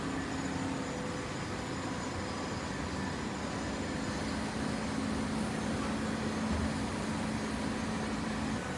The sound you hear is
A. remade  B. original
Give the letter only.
B